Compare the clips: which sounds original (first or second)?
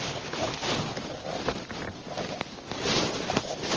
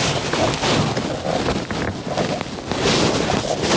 second